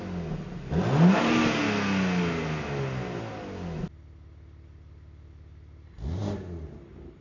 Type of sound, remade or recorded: recorded